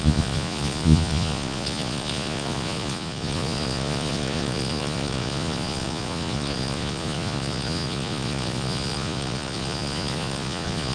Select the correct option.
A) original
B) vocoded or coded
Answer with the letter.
B